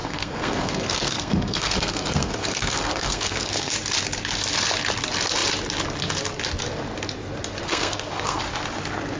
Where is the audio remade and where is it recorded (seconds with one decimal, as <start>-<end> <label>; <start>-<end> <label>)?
0.0-3.7 remade; 3.7-7.6 recorded; 7.6-8.4 remade; 8.4-9.2 recorded